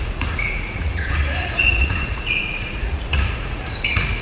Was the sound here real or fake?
fake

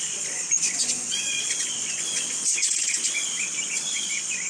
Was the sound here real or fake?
fake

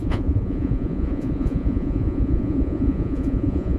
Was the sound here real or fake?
fake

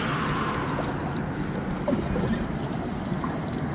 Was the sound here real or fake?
real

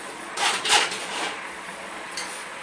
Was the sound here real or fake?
fake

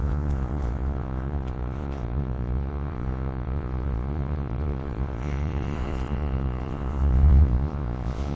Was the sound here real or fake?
fake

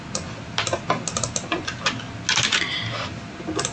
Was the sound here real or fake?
real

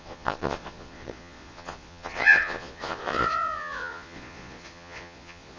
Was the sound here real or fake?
fake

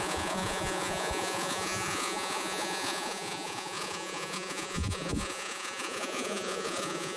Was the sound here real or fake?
fake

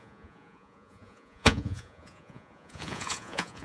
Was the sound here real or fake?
fake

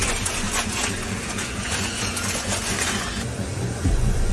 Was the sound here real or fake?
fake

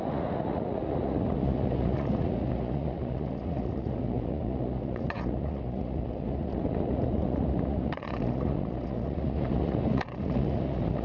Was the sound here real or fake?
fake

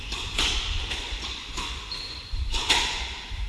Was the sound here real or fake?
fake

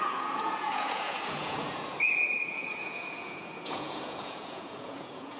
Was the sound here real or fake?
fake